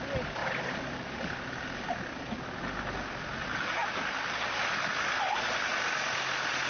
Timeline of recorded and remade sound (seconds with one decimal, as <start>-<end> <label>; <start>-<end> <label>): 0.0-6.7 recorded